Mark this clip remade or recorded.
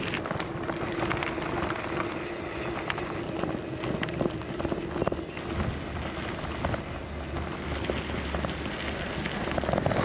recorded